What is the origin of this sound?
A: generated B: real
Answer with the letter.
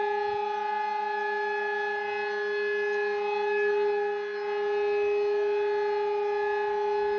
B